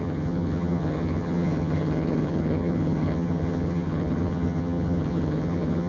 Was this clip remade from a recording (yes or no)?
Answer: yes